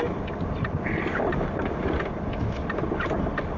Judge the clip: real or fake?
real